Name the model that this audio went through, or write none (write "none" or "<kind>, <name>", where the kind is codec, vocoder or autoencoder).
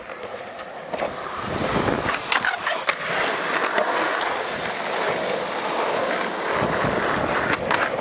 none